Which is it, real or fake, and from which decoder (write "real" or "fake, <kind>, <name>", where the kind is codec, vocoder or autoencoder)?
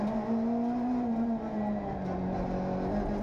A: real